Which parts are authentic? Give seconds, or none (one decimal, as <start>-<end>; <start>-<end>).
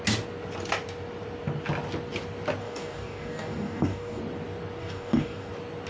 0.0-2.6; 4.2-4.8; 5.5-5.9